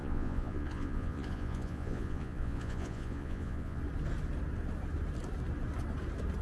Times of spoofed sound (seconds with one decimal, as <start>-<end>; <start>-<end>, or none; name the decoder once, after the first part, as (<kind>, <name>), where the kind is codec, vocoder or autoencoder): 0.0-3.8 (vocoder, Vocos)